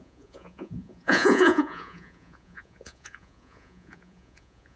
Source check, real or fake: fake